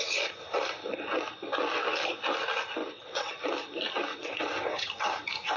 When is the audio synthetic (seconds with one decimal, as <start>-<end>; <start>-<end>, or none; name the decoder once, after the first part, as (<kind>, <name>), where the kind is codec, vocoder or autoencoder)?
2.8-3.3 (vocoder, WaveNeXt); 4.1-4.9